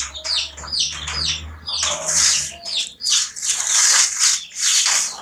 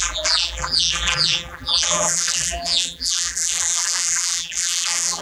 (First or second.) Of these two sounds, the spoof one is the second